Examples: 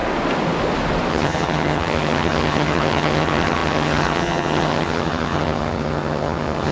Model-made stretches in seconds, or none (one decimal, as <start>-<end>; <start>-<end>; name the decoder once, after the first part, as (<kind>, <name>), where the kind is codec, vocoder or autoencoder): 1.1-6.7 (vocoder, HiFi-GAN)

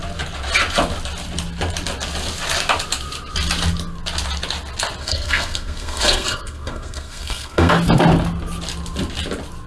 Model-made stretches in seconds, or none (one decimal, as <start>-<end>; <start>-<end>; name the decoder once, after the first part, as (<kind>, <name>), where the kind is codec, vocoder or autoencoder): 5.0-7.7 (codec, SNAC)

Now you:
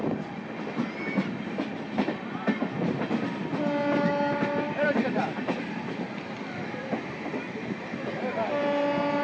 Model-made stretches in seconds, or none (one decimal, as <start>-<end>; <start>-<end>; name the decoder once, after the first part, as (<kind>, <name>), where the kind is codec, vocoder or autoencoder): 5.0-5.6 (vocoder, BigVGAN v2)